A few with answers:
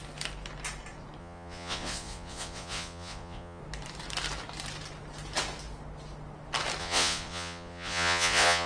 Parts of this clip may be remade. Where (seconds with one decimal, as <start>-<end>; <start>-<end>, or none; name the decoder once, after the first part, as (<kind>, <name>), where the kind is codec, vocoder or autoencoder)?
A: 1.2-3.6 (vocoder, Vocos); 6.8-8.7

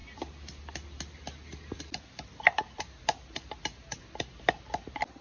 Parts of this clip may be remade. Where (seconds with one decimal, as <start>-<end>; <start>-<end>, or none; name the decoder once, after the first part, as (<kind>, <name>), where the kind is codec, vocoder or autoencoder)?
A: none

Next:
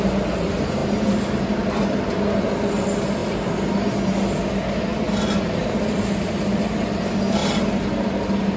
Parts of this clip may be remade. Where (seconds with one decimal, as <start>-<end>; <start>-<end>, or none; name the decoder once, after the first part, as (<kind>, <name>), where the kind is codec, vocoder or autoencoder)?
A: none

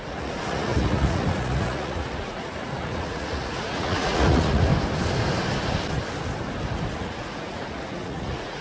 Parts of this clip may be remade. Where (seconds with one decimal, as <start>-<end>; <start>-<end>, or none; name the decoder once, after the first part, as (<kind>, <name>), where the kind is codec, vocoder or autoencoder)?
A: 0.0-4.7 (vocoder, Vocos); 6.9-8.6

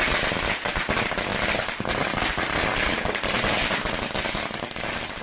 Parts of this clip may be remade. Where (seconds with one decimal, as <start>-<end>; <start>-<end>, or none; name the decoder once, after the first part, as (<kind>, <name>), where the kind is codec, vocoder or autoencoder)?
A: none

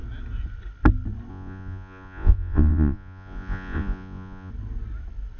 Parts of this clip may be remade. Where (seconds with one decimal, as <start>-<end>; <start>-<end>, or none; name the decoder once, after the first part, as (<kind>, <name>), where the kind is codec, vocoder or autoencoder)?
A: 1.3-4.5 (vocoder, Vocos)

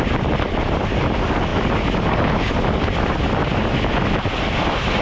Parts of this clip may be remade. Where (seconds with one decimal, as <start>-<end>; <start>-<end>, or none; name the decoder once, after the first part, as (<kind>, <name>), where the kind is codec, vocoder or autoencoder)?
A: none